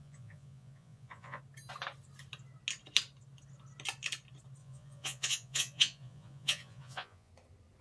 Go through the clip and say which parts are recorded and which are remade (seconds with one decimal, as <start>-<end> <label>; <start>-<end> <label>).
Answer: 0.0-1.4 remade; 1.4-4.6 recorded; 4.6-7.3 remade; 7.3-7.8 recorded